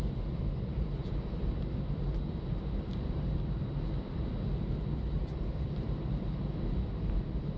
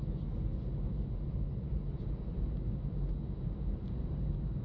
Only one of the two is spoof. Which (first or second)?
first